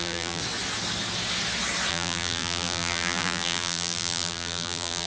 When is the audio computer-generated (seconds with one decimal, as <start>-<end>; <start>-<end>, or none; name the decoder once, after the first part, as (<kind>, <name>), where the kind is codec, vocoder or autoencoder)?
0.0-0.4 (vocoder, BigVGAN v2); 1.9-5.1